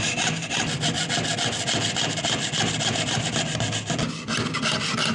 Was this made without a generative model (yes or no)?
yes